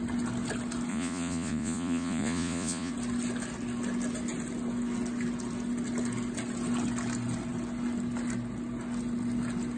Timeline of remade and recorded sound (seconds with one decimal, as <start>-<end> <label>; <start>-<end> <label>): 0.0-0.9 recorded; 0.9-2.9 remade; 2.9-9.8 recorded